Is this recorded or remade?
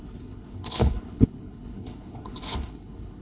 remade